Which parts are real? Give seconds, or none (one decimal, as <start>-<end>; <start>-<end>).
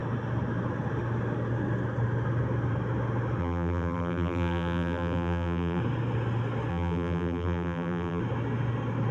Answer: 0.0-3.4; 5.8-6.7; 8.2-9.1